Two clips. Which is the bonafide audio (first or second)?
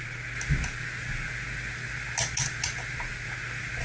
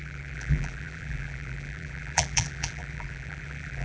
first